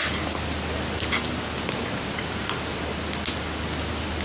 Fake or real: real